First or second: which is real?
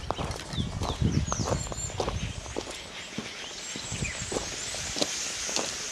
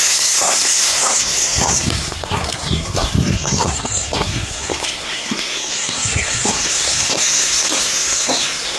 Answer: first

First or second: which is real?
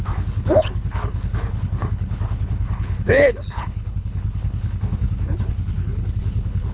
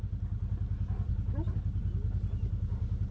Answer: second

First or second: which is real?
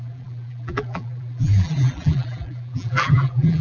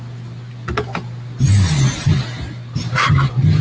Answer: second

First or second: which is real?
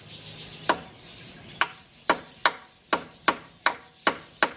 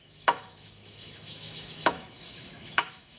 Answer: first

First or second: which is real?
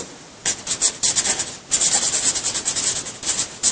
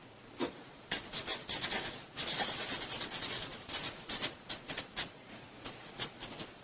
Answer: first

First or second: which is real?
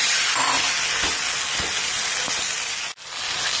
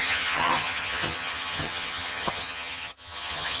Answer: first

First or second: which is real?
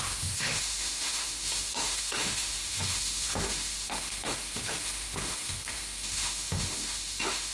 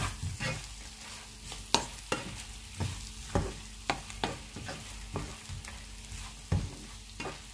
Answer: second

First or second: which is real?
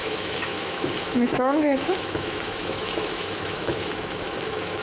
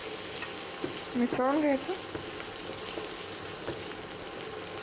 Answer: second